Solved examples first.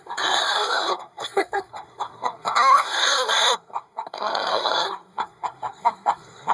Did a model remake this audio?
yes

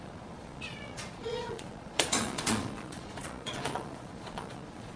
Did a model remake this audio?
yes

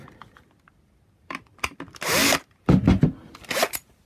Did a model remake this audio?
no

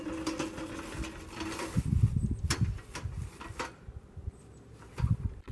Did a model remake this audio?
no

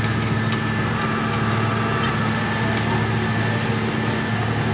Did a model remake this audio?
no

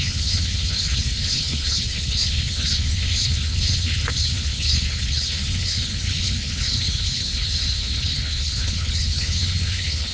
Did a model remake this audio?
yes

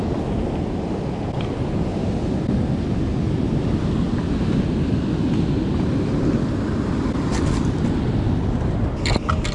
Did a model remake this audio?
no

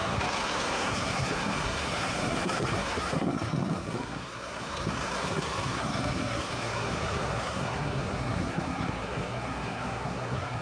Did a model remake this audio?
yes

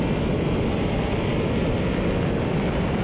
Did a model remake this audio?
no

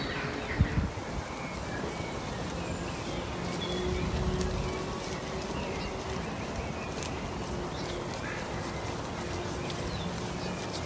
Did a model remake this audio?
no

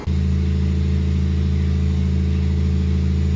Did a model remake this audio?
no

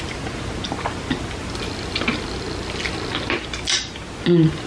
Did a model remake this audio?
no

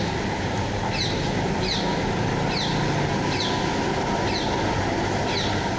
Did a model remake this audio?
no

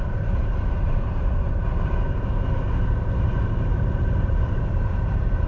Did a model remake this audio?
yes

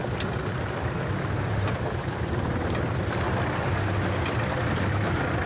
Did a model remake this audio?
no